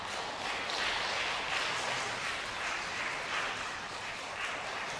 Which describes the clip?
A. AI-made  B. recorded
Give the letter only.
B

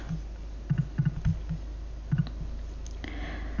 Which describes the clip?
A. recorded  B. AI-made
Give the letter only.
A